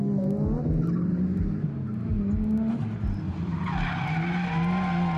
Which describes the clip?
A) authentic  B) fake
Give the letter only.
A